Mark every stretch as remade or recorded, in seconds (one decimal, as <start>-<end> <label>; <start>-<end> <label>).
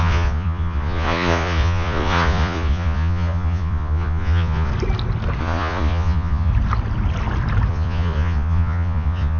0.0-4.7 remade; 4.7-5.4 recorded; 5.4-6.5 remade; 6.5-7.7 recorded; 7.7-9.4 remade